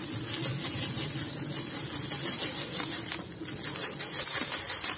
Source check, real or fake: real